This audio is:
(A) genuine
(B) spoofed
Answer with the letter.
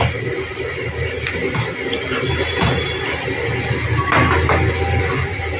A